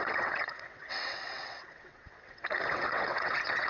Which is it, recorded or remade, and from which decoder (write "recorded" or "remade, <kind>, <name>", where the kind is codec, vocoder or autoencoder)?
remade, vocoder, WaveNeXt